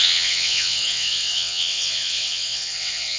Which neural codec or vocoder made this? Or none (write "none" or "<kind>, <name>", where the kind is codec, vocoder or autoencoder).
vocoder, WaveNeXt